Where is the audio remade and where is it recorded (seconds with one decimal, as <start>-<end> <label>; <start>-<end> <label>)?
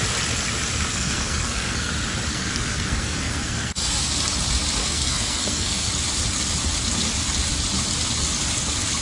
0.0-0.9 recorded; 0.9-1.9 remade; 1.9-2.3 recorded; 2.3-4.1 remade; 4.1-4.8 recorded; 4.8-5.9 remade; 5.9-9.0 recorded